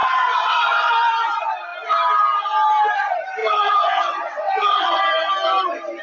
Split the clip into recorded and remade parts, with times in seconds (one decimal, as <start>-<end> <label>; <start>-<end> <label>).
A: 0.0-0.9 remade; 0.9-3.4 recorded; 3.4-5.0 remade; 5.0-6.0 recorded